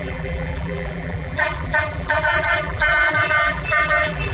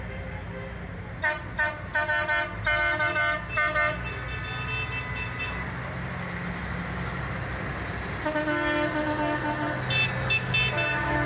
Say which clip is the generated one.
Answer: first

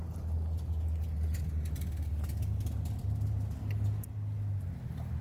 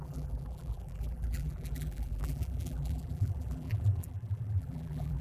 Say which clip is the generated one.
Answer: second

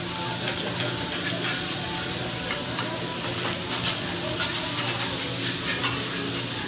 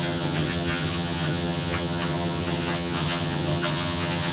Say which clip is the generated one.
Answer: second